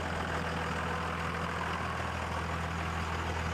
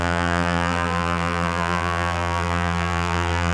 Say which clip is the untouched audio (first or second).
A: first